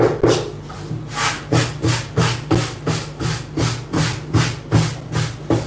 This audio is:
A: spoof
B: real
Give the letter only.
B